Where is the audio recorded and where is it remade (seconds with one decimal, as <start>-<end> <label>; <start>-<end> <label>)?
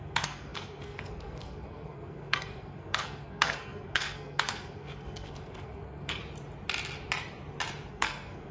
0.0-6.2 remade; 6.2-7.9 recorded; 7.9-8.5 remade